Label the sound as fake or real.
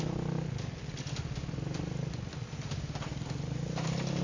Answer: real